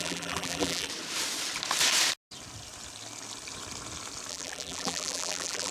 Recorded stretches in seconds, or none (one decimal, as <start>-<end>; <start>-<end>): 0.9-4.3